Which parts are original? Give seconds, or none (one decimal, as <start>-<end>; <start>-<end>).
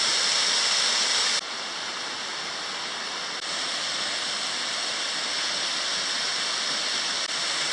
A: 0.0-7.7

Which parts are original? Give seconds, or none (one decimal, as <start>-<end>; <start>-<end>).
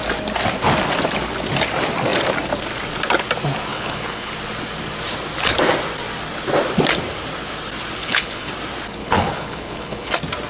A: 0.0-3.7; 4.3-8.0; 8.5-9.0; 10.1-10.5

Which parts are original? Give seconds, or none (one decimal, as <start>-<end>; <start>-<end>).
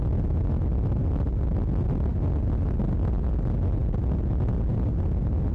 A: 0.0-5.5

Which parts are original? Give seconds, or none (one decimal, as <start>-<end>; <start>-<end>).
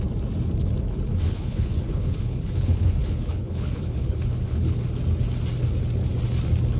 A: 0.0-1.1; 5.0-6.8